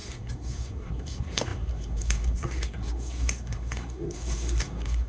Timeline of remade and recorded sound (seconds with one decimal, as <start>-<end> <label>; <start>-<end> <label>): 0.0-5.1 remade